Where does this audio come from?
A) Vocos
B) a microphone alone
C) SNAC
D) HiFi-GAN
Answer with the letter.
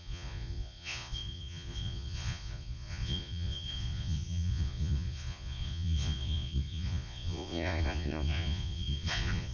A